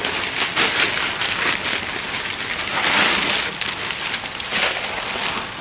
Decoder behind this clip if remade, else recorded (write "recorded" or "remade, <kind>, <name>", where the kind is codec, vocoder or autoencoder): recorded